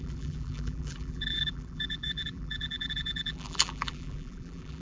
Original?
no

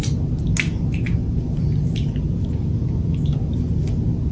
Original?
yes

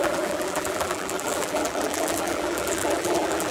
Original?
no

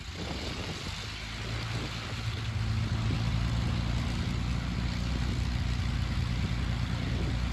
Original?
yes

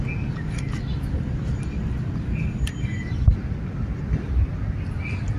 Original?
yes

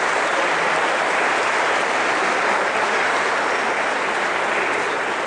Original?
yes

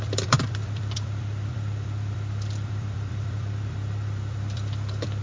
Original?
no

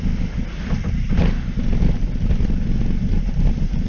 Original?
yes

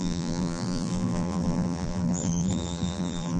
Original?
no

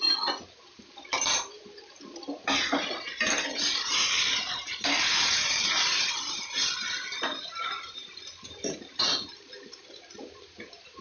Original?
no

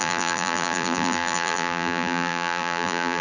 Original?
no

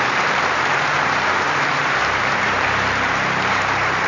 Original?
no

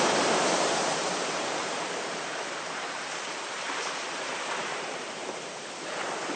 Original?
no